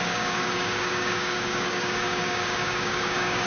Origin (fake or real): fake